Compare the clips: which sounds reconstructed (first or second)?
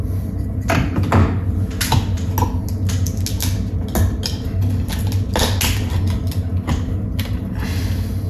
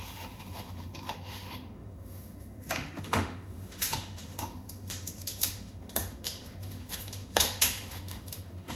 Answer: second